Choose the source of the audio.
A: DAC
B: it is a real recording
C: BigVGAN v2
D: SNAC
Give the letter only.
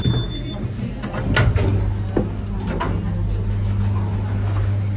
B